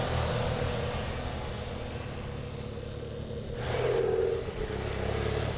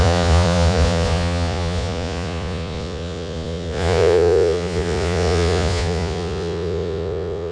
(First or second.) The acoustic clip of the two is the first